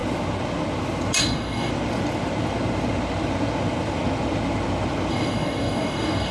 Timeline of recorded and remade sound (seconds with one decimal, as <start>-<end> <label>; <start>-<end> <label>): 0.0-1.2 recorded; 1.2-1.7 remade; 1.7-5.1 recorded; 5.1-6.3 remade